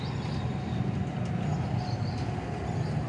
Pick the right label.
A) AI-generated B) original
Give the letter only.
B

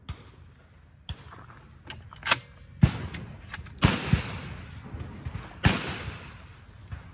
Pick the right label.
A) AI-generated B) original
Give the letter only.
B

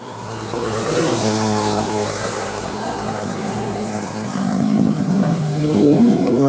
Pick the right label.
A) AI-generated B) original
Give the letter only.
A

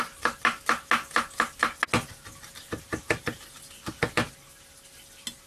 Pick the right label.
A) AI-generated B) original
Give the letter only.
B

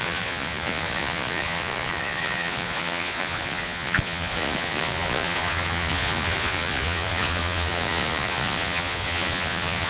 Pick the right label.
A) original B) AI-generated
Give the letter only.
B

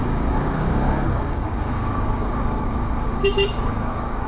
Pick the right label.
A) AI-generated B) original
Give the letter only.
A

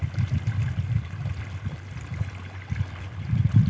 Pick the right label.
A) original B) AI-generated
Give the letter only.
A